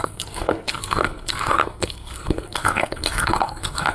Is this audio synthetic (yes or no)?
yes